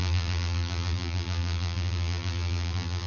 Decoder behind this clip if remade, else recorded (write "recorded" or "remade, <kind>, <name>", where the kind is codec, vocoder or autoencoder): remade, vocoder, BigVGAN v2